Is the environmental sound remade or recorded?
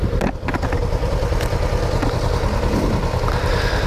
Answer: recorded